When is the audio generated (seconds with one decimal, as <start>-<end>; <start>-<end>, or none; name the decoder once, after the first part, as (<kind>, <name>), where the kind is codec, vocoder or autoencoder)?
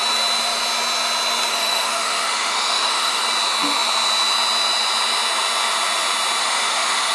1.5-3.2 (autoencoder, DAC-VAE); 6.4-7.1